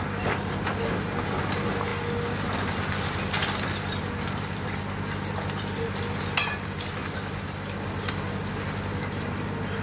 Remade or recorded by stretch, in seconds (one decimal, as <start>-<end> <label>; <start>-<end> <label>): 0.0-9.8 recorded

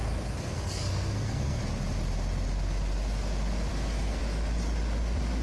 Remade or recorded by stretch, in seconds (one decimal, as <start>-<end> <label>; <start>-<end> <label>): 0.0-1.6 remade; 1.6-3.7 recorded; 3.7-4.2 remade; 4.2-5.4 recorded

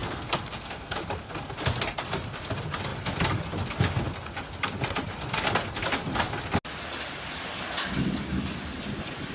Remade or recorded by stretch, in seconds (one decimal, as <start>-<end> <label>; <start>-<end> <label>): 0.0-1.0 remade; 1.0-9.3 recorded

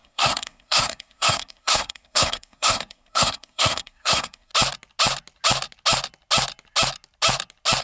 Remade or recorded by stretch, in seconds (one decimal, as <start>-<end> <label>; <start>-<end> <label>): 0.0-4.5 remade; 4.5-7.8 recorded